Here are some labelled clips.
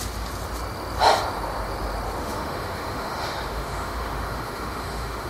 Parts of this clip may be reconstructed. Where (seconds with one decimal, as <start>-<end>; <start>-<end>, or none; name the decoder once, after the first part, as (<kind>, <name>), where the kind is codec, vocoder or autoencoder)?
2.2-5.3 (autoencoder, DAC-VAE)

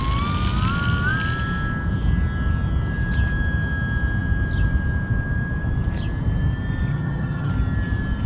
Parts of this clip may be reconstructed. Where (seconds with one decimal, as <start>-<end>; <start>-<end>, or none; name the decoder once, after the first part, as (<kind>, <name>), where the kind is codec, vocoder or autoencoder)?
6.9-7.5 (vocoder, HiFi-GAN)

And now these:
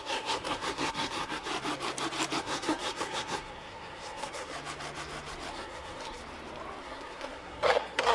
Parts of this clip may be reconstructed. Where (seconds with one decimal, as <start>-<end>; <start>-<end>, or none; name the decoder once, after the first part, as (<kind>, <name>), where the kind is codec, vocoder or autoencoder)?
0.0-1.5 (codec, SNAC); 2.4-4.5; 5.5-6.2; 6.8-8.1

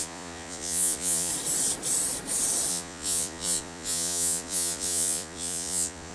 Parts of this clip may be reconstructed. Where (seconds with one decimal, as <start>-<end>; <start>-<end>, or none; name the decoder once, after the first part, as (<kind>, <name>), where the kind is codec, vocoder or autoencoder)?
0.0-1.3 (vocoder, Vocos); 2.7-6.1

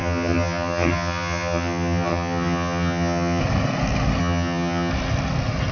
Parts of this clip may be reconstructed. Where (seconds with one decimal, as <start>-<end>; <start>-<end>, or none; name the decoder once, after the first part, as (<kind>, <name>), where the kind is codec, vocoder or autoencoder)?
0.0-3.4 (vocoder, HiFi-GAN); 4.2-4.9